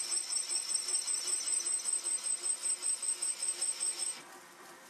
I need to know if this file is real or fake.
fake